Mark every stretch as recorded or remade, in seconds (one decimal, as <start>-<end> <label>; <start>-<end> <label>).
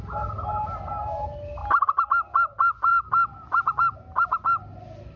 0.0-1.6 recorded; 1.6-2.1 remade; 2.1-5.2 recorded